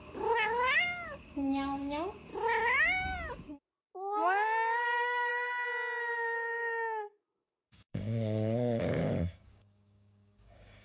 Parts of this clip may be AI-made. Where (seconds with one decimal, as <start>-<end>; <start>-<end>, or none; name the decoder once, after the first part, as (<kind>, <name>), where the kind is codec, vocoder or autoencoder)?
0.0-2.3 (codec, DAC); 3.3-5.3; 6.0-10.8